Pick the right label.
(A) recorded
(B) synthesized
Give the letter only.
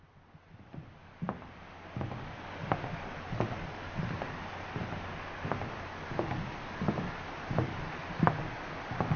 A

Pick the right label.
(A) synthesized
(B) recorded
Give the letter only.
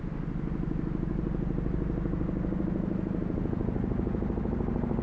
B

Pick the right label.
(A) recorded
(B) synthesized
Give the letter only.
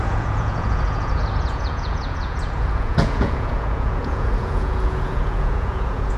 B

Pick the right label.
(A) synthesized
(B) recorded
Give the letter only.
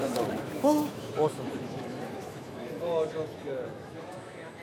A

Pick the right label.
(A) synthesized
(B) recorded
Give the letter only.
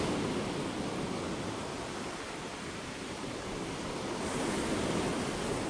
B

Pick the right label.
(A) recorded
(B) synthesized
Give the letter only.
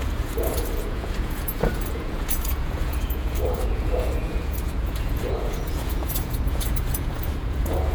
B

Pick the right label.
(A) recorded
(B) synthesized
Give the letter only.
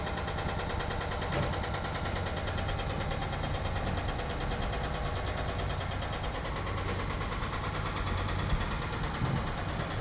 A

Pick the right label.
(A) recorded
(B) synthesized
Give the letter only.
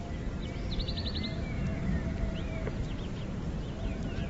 A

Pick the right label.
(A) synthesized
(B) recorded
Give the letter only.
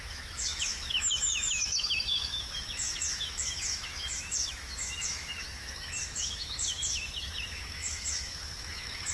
A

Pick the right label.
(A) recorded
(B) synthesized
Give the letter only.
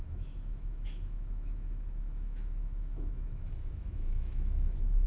B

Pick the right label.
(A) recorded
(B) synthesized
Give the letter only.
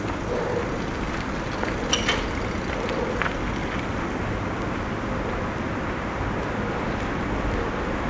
A